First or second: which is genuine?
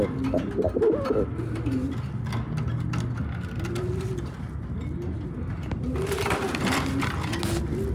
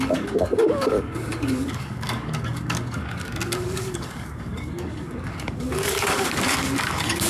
first